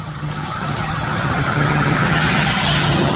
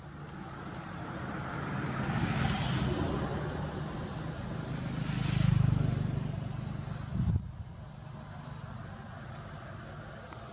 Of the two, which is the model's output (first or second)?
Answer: first